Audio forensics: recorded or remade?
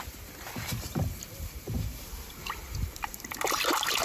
remade